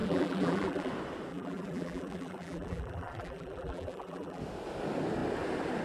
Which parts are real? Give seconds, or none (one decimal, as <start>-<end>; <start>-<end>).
0.9-1.3; 4.4-5.8